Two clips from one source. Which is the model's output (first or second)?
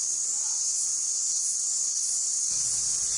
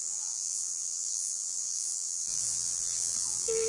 second